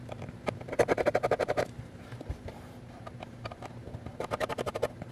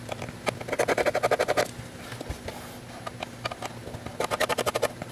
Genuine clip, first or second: second